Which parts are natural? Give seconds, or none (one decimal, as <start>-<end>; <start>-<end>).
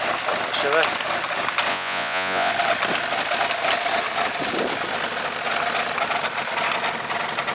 0.0-1.7; 2.5-7.5